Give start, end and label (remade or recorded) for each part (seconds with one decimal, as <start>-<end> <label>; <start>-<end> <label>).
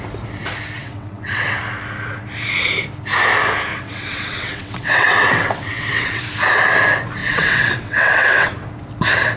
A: 0.0-0.8 recorded; 0.8-1.6 remade; 1.6-3.7 recorded; 3.7-6.2 remade; 6.2-7.2 recorded; 7.2-8.5 remade; 8.5-9.4 recorded